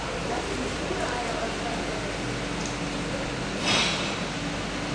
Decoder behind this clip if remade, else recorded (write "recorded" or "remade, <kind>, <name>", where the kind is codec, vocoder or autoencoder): recorded